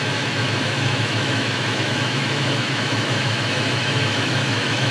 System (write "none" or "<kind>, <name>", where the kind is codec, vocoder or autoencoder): autoencoder, DAC-VAE